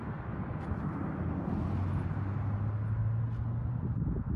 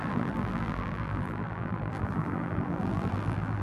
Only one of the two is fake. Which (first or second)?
second